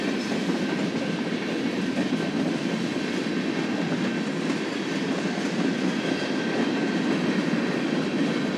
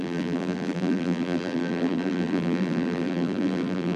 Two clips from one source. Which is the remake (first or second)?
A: second